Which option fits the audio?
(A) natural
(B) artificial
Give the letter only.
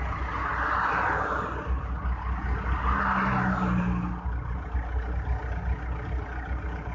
A